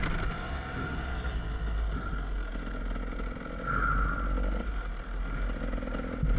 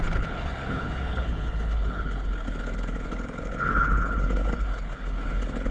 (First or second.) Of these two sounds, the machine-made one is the second